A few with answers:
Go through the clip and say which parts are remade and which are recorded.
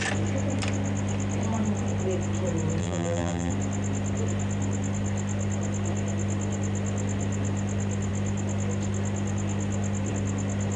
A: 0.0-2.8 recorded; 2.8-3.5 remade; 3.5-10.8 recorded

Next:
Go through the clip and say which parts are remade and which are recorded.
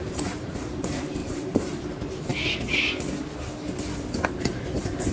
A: 0.0-2.3 remade; 2.3-4.4 recorded; 4.4-5.1 remade